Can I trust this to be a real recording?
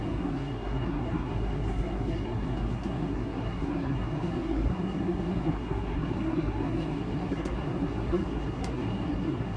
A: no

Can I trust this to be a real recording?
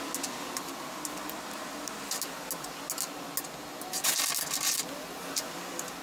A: yes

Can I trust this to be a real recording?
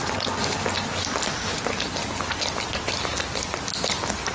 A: yes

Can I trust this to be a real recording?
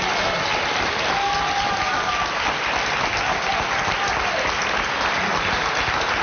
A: yes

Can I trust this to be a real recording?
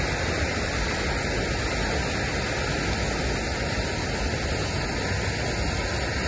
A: yes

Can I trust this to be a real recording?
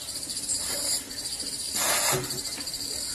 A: no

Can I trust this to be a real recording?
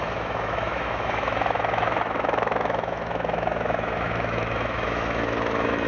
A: no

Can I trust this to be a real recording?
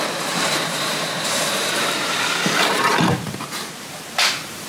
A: no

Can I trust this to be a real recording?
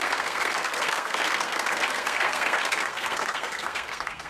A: no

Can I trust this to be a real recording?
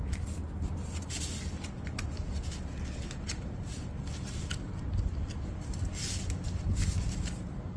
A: yes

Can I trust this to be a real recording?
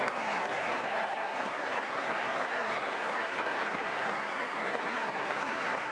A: no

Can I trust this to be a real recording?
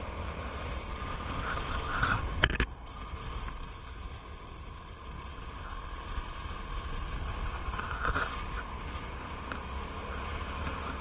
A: yes